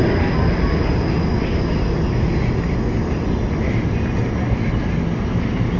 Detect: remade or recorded recorded